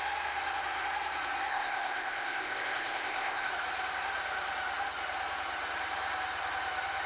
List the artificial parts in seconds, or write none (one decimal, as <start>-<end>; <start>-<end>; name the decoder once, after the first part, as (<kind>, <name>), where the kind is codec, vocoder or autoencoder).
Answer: 1.5-3.5 (codec, ZipCodec)